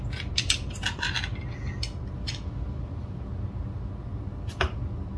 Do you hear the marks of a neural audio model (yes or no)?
no